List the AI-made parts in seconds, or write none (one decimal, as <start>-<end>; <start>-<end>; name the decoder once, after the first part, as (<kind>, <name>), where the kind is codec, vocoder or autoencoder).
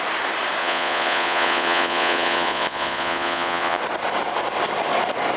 0.6-3.8 (vocoder, Vocos)